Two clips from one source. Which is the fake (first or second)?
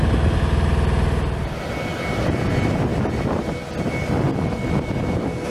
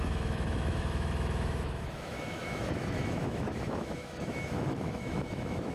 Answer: second